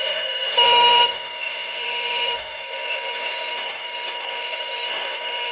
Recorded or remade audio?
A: remade